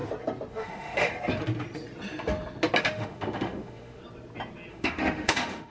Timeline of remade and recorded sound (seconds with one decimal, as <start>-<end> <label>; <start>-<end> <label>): 0.0-0.5 recorded; 0.5-1.1 remade; 1.1-2.8 recorded; 2.8-4.0 remade; 4.0-4.7 recorded; 4.7-5.7 remade